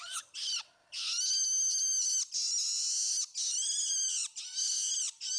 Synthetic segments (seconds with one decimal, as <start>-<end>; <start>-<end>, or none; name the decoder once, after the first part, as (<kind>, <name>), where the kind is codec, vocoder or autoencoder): none